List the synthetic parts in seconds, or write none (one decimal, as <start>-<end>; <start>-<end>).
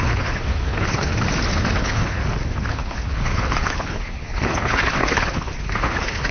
0.0-1.1; 1.8-2.2; 2.7-6.3